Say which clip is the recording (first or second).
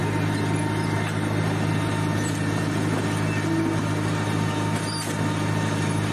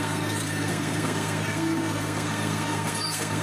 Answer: first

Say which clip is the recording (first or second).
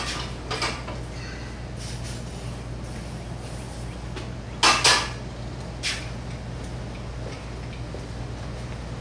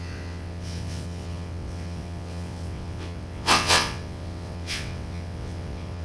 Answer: first